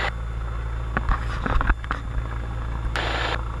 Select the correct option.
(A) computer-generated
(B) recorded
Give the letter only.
B